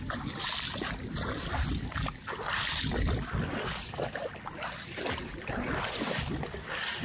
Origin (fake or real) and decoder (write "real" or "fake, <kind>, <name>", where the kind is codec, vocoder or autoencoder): real